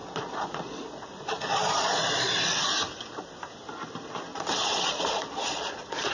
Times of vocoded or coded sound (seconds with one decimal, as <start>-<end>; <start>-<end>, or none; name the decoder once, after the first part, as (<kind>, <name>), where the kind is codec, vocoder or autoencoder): 0.0-2.7 (vocoder, Vocos); 4.3-6.1